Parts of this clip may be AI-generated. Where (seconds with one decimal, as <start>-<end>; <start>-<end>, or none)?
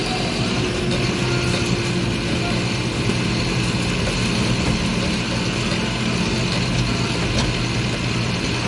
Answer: none